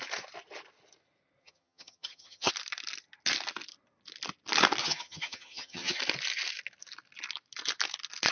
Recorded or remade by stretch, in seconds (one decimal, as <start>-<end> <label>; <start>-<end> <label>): 0.0-1.4 recorded; 1.4-2.5 remade; 2.5-4.8 recorded; 4.8-6.0 remade; 6.0-8.3 recorded